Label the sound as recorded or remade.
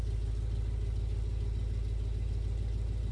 recorded